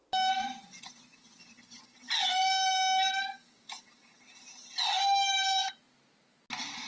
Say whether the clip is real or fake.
real